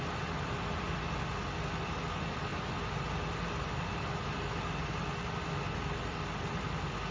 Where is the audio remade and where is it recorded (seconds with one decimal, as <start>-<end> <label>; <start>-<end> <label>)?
0.0-7.1 recorded